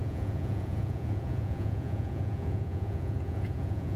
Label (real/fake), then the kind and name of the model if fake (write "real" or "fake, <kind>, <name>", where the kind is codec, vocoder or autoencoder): fake, vocoder, Vocos